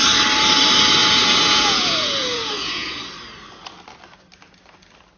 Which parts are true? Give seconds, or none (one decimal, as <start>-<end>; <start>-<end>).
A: 0.0-1.0; 3.0-5.2